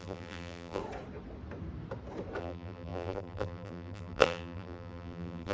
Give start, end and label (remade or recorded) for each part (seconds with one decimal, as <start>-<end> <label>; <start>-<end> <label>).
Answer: 0.0-0.8 remade; 0.8-2.4 recorded; 2.4-5.5 remade